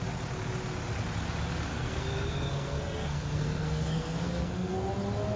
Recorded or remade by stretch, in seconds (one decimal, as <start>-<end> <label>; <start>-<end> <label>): 0.0-1.7 recorded; 1.7-4.9 remade; 4.9-5.4 recorded